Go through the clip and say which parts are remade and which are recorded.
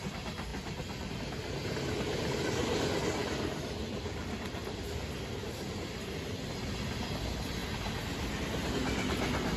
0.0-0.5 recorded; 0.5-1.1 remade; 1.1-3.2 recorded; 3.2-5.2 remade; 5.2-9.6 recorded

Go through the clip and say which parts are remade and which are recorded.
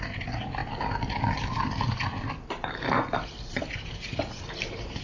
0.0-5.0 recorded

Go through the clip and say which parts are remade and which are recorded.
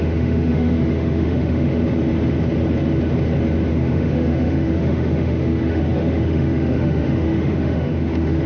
0.0-1.8 remade; 1.8-3.7 recorded; 3.7-8.5 remade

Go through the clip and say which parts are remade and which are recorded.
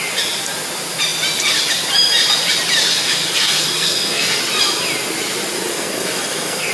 0.0-2.9 recorded; 2.9-4.4 remade; 4.4-5.7 recorded; 5.7-6.7 remade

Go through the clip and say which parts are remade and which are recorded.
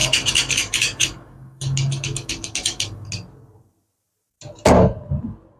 0.0-3.1 remade; 3.1-5.6 recorded